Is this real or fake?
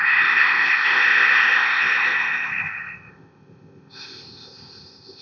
fake